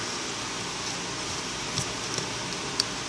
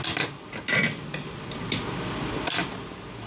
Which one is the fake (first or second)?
first